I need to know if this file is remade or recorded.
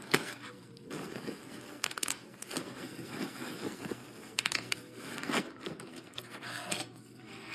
remade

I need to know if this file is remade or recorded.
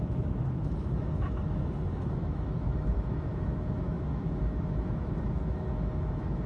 remade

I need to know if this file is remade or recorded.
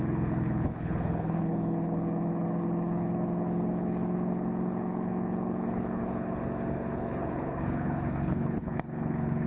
remade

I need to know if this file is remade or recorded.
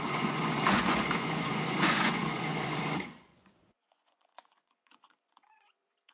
remade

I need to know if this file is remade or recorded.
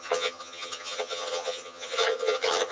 remade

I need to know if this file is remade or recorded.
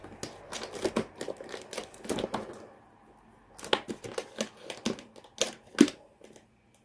recorded